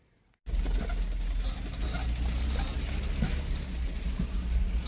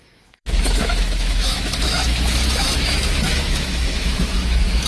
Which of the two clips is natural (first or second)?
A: first